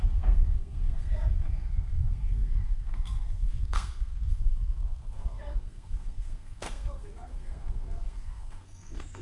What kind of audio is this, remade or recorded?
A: remade